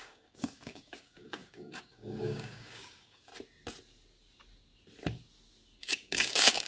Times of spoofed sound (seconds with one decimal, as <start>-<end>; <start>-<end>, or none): 0.0-3.3; 5.8-6.7